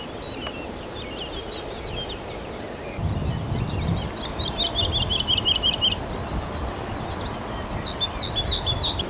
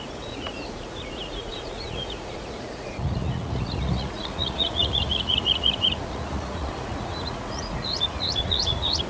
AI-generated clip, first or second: second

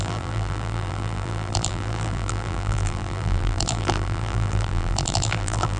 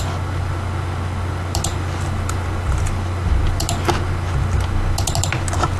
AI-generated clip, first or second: first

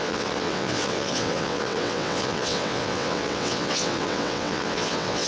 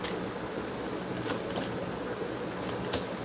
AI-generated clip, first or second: first